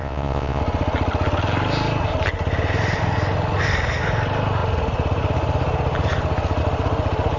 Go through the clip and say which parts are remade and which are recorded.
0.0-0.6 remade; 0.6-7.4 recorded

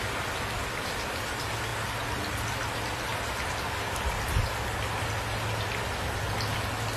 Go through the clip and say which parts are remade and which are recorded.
0.0-7.0 recorded

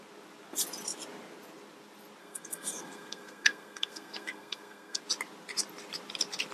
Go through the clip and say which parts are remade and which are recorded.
0.0-2.2 recorded; 2.2-5.0 remade; 5.0-6.5 recorded

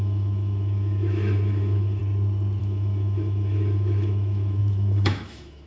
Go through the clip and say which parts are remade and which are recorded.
0.0-2.0 remade; 2.0-2.6 recorded; 2.6-5.7 remade